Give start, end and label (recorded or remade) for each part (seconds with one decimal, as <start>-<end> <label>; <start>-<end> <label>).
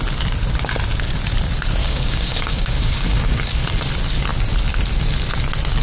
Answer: 0.0-1.8 recorded; 1.8-3.6 remade; 3.6-5.8 recorded